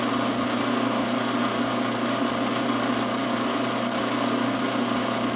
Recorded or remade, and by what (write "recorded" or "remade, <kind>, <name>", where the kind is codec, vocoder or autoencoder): recorded